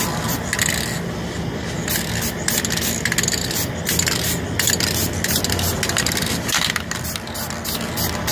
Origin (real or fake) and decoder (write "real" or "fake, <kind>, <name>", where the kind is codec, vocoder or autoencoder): real